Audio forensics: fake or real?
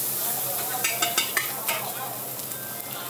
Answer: real